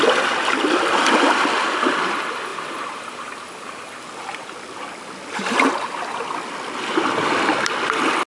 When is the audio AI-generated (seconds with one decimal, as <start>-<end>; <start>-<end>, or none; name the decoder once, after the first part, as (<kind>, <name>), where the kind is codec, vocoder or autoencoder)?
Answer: none

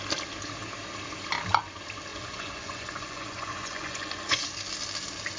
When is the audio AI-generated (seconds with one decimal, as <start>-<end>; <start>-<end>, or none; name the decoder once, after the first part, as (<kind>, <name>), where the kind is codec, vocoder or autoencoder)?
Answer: 2.1-4.4 (vocoder, Vocos)

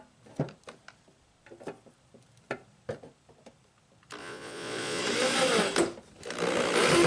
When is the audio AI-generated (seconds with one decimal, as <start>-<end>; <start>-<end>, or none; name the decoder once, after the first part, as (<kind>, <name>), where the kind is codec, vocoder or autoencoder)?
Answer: 4.2-5.0 (vocoder, Vocos)

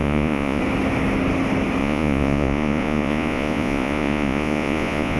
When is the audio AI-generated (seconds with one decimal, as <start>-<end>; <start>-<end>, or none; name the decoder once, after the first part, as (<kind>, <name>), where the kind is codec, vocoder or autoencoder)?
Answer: 0.0-0.6 (vocoder, Vocos); 1.8-5.2

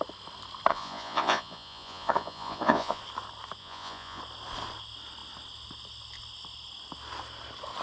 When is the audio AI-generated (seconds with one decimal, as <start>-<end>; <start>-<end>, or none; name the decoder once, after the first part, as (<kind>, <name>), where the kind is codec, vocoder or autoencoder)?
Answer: 0.7-3.0 (vocoder, Vocos); 3.6-4.2

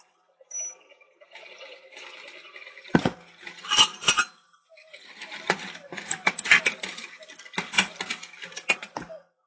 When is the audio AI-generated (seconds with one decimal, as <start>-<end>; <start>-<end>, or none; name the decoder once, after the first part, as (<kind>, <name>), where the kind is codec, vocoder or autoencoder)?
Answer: none

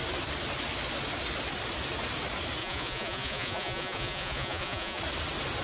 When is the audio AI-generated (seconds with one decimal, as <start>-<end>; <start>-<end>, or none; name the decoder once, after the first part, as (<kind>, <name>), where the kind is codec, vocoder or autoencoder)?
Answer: 2.6-5.0 (vocoder, Vocos)